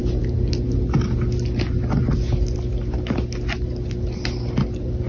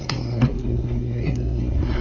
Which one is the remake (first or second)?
second